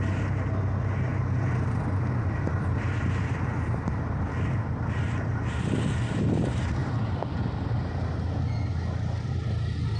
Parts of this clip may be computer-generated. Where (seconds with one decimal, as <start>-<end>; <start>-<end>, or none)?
1.1-5.6; 6.8-7.7